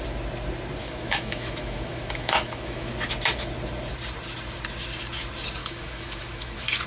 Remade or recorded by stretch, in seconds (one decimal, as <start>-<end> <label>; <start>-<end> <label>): 0.0-0.8 recorded; 0.8-2.9 remade; 2.9-5.6 recorded; 5.6-6.9 remade